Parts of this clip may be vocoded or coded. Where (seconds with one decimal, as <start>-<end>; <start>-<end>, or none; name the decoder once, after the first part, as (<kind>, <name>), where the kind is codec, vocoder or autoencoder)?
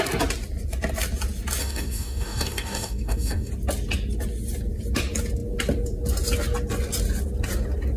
1.6-3.5 (codec, DAC)